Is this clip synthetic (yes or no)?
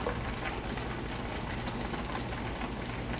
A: no